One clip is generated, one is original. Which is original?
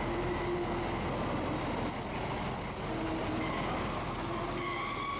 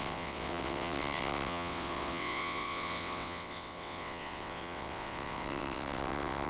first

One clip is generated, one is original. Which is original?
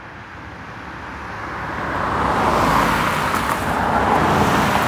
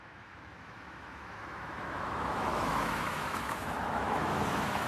first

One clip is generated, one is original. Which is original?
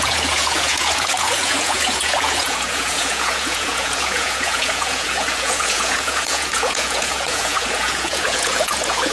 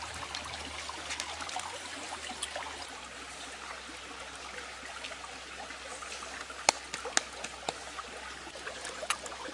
second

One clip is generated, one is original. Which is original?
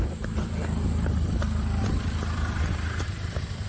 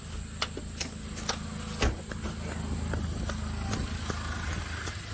second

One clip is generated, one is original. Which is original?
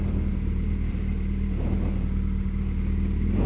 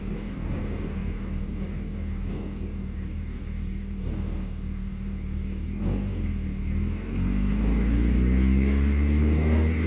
first